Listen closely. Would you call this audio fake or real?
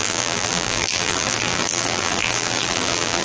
fake